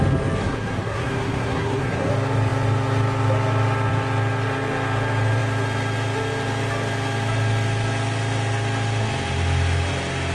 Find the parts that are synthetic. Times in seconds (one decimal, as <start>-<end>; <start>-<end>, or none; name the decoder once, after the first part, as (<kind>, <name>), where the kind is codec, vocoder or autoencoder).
0.4-2.1 (codec, SNAC)